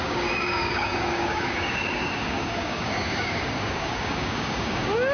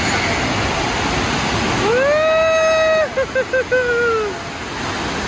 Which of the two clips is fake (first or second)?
first